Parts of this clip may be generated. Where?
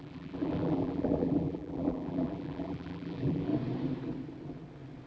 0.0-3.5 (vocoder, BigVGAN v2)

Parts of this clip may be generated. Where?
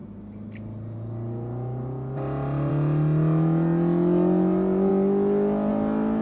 none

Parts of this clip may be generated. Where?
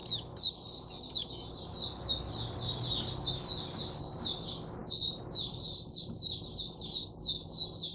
none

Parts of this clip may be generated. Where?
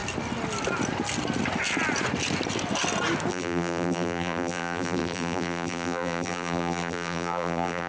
3.3-7.9 (vocoder, BigVGAN v2)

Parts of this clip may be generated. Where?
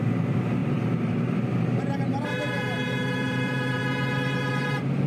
0.0-3.8 (vocoder, BigVGAN v2); 4.5-5.1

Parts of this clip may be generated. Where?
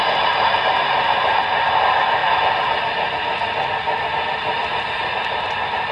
none